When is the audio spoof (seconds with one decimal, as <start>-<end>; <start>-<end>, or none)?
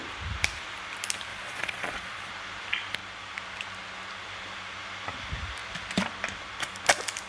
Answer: 1.3-2.3